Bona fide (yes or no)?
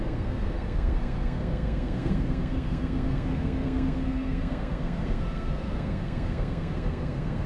no